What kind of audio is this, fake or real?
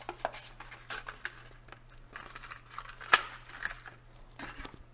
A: real